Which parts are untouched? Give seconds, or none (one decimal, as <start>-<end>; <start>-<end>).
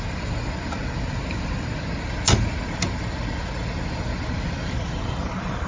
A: 0.0-5.7